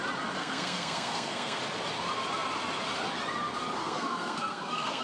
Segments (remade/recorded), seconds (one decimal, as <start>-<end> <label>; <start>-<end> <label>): 0.0-0.4 recorded; 0.4-1.6 remade; 1.6-3.8 recorded; 3.8-5.0 remade